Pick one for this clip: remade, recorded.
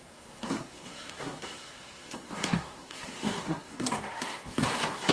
remade